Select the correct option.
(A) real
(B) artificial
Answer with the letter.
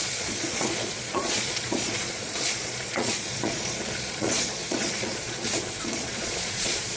B